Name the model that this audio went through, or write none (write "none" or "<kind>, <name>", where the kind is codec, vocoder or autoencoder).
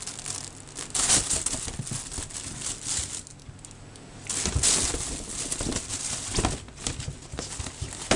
none